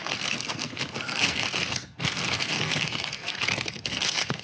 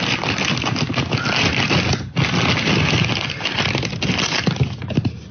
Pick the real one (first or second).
second